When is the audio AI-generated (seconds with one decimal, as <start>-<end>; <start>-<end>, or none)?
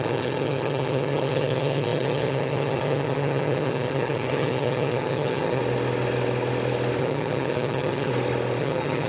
0.0-5.6; 7.0-8.1; 8.6-9.1